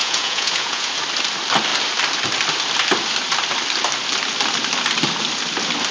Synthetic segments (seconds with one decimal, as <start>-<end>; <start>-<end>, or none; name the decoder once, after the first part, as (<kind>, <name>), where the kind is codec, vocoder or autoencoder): 0.0-1.0 (vocoder, Vocos)